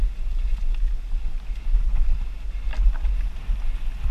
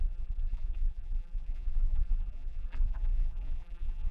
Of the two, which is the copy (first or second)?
second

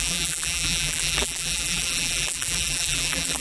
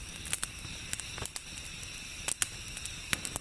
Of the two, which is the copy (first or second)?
first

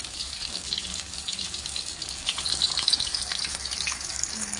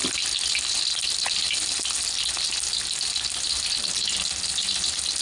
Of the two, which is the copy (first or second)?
first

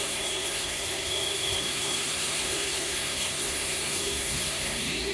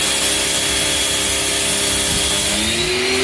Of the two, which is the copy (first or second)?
first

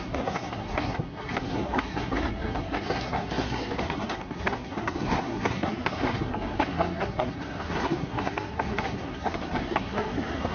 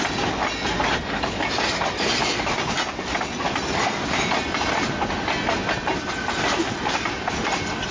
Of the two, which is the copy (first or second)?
first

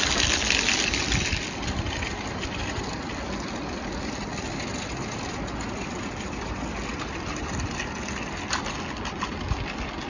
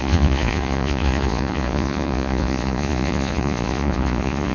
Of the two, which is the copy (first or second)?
second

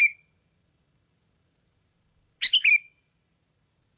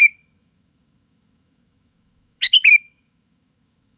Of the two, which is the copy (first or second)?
second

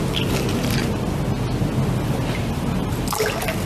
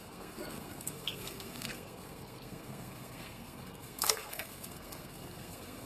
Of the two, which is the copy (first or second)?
second